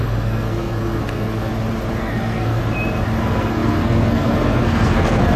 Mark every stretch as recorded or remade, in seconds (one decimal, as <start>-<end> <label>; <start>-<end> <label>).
0.0-1.5 remade; 1.5-2.0 recorded; 2.0-2.6 remade; 2.6-3.2 recorded; 3.2-5.4 remade